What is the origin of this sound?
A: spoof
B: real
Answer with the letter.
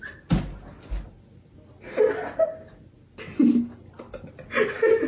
B